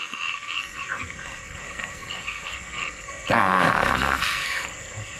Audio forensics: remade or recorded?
remade